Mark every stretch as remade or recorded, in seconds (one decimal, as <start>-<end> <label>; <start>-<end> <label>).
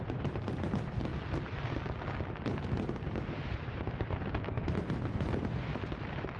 0.0-1.1 remade; 1.1-2.3 recorded; 2.3-6.4 remade